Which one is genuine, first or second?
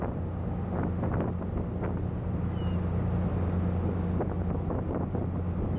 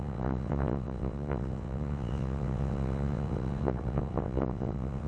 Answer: first